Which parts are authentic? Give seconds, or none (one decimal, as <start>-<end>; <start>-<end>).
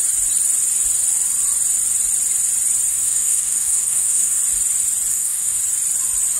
0.0-2.9; 4.4-5.1; 5.6-6.4